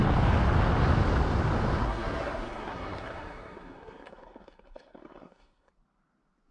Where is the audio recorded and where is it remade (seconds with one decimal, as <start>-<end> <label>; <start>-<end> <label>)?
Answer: 0.0-1.8 recorded; 1.8-5.7 remade; 5.7-6.5 recorded